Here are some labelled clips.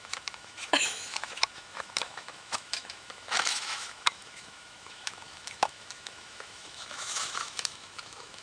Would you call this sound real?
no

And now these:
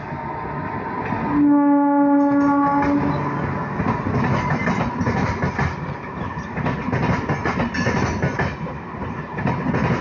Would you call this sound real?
yes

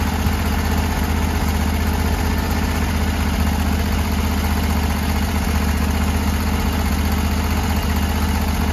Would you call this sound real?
yes